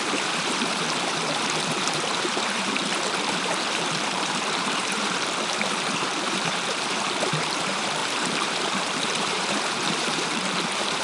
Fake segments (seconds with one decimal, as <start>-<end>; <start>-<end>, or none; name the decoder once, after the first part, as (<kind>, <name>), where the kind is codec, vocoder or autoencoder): 0.0-11.0 (vocoder, BigVGAN v2)